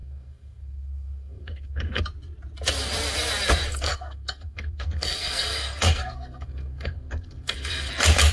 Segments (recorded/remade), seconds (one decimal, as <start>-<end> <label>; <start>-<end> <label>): 0.0-2.0 remade; 2.0-3.7 recorded; 3.7-7.9 remade; 7.9-8.3 recorded